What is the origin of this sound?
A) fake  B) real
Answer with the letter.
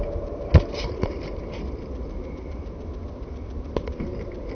B